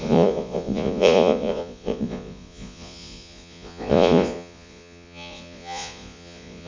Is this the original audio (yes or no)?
no